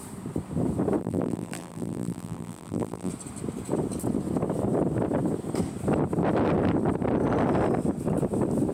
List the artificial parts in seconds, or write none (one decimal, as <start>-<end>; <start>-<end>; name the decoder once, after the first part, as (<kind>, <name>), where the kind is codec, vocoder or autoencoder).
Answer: 1.0-3.1 (vocoder, BigVGAN v2)